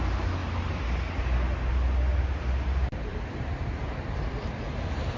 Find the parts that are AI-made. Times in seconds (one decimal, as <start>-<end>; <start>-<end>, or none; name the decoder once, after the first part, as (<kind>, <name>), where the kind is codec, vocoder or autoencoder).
none

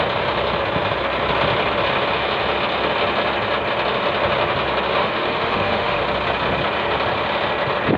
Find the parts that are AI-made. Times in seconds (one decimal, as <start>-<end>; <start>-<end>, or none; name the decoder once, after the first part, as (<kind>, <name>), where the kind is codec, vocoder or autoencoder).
5.0-6.0 (autoencoder, DAC-VAE)

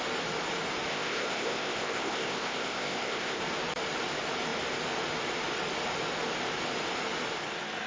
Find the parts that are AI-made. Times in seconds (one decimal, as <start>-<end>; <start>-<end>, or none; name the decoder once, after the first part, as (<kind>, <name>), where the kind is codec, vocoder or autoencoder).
0.9-3.4 (codec, ZipCodec)

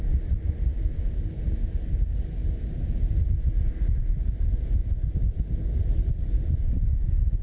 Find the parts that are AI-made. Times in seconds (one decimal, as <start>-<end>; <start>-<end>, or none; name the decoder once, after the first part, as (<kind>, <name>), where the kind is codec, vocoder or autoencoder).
none

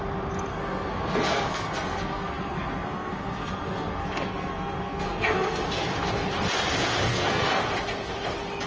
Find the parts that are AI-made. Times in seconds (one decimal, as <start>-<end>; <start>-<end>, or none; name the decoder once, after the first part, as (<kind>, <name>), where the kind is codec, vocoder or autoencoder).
0.5-5.6 (codec, SNAC); 7.1-7.6

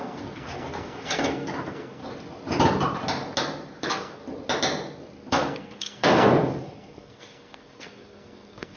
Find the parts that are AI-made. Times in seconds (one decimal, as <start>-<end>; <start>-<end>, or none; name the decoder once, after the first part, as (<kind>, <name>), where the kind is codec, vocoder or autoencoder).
0.0-2.0 (codec, SNAC); 3.8-4.2; 5.3-6.3; 6.8-8.8

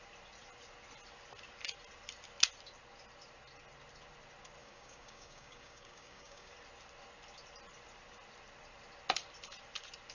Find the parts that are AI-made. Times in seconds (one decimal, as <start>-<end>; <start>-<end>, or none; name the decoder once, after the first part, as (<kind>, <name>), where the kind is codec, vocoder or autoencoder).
4.6-6.5 (codec, DAC)